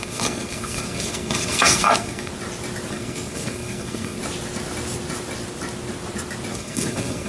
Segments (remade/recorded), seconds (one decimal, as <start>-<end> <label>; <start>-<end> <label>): 0.0-2.3 remade; 2.3-2.9 recorded; 2.9-4.2 remade; 4.2-6.5 recorded; 6.5-7.3 remade